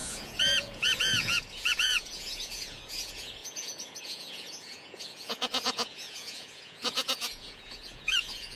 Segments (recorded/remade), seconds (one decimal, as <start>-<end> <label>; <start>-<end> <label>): 0.0-8.6 remade

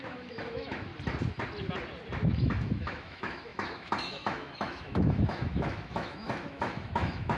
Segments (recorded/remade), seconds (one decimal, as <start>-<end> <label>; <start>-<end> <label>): 0.0-0.9 remade; 0.9-2.4 recorded; 2.4-7.4 remade

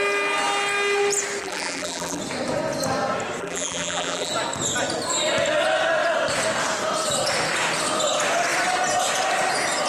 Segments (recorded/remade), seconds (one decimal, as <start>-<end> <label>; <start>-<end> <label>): 0.0-1.4 recorded; 1.4-2.2 remade; 2.2-3.4 recorded; 3.4-4.3 remade; 4.3-9.9 recorded

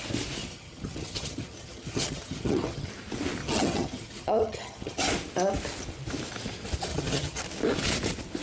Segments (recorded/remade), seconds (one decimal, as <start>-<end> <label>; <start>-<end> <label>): 0.0-0.4 recorded; 0.4-2.9 remade; 2.9-3.4 recorded; 3.4-5.0 remade; 5.0-6.9 recorded; 6.9-7.4 remade; 7.4-8.4 recorded

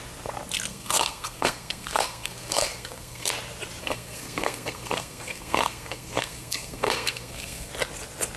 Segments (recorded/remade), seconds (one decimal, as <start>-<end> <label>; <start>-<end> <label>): 0.0-0.7 recorded; 0.7-3.3 remade; 3.3-3.8 recorded; 3.8-7.7 remade; 7.7-8.4 recorded

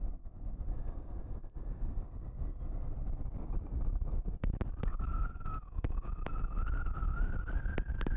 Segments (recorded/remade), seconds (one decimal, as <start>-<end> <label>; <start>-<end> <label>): 0.0-8.2 recorded

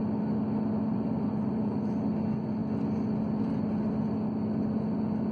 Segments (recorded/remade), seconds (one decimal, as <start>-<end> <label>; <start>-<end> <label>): 0.0-0.9 recorded; 0.9-2.1 remade; 2.1-5.3 recorded

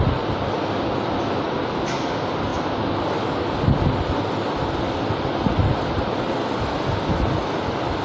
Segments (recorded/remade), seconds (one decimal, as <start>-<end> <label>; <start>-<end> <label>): 0.0-8.0 recorded